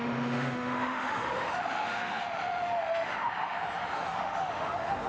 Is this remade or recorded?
remade